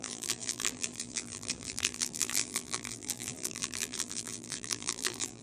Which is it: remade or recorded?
remade